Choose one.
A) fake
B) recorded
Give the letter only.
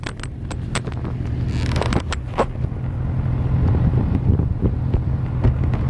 B